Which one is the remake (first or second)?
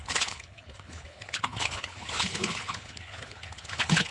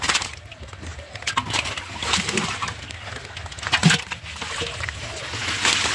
first